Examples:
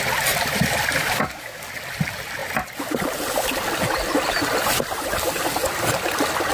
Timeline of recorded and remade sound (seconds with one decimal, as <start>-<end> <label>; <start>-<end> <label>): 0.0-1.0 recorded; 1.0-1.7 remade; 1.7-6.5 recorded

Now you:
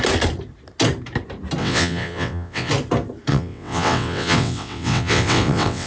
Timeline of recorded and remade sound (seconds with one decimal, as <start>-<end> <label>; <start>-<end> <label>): 0.0-1.6 recorded; 1.6-2.7 remade; 2.7-3.3 recorded; 3.3-5.9 remade

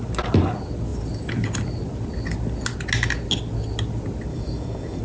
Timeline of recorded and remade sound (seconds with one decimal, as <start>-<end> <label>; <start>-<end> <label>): 0.0-4.3 recorded; 4.3-5.0 remade